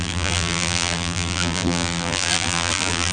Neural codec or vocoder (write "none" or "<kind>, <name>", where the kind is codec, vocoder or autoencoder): vocoder, BigVGAN v2